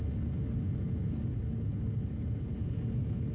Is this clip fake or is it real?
real